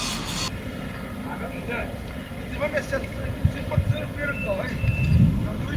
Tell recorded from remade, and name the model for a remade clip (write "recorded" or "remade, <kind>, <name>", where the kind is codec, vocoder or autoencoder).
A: recorded